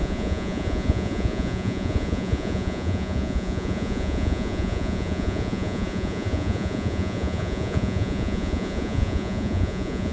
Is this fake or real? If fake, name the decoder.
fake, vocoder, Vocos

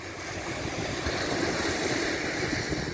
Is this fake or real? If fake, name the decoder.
real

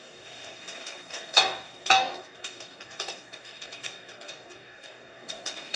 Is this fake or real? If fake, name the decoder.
fake, codec, DAC